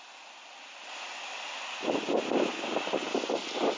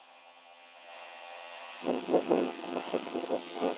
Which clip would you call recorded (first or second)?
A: first